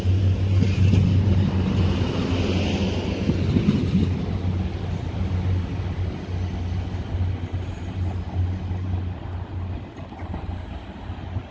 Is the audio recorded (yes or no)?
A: yes